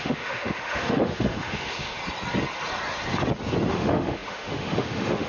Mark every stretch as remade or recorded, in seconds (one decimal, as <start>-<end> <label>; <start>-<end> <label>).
0.0-2.0 remade; 2.0-3.7 recorded; 3.7-5.3 remade